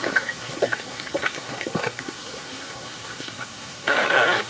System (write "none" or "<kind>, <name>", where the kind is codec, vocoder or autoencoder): codec, SNAC